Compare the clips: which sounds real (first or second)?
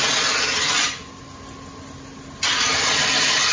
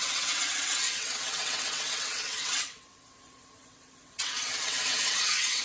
first